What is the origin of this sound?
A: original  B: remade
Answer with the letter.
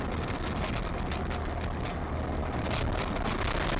A